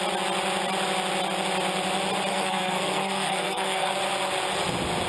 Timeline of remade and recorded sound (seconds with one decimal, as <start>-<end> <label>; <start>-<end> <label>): 0.0-2.3 recorded; 2.3-3.9 remade; 3.9-5.1 recorded